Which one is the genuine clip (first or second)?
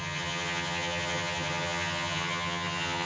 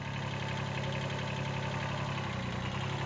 second